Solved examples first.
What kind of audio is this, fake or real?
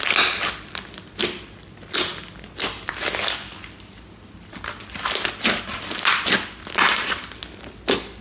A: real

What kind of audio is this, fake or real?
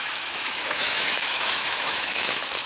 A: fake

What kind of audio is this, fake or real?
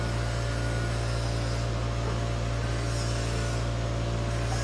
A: real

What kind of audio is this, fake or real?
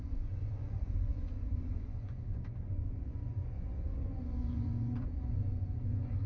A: fake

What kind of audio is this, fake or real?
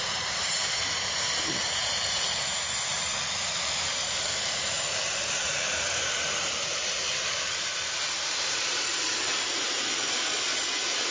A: fake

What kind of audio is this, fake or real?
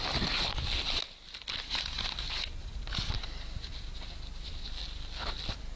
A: real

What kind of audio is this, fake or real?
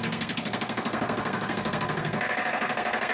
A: fake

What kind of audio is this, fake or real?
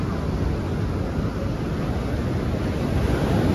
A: real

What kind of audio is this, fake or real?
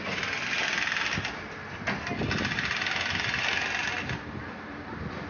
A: real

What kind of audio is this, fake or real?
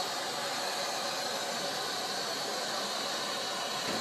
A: real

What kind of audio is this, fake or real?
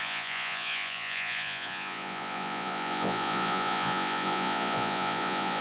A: fake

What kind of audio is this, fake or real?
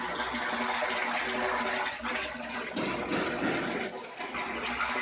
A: real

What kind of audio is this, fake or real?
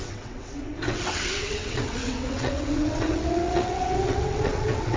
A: fake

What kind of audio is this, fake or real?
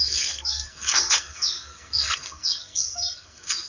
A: fake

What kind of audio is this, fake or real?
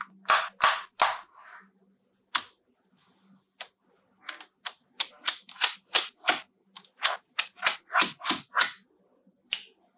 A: real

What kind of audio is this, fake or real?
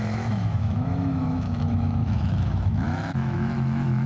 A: fake